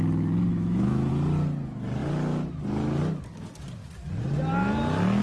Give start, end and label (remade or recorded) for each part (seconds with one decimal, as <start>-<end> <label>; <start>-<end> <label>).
0.0-0.5 recorded; 0.5-1.1 remade; 1.1-5.2 recorded